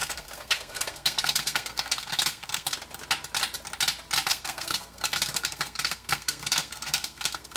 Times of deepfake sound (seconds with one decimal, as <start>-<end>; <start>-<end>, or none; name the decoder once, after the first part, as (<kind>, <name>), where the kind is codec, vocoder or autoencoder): 0.0-2.7 (codec, SNAC); 4.3-7.6